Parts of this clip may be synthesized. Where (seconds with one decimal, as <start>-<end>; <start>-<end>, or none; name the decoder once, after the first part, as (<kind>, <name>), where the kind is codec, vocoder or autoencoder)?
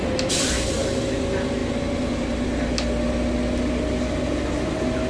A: none